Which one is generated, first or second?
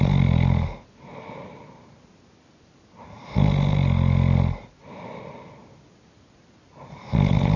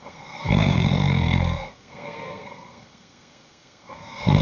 second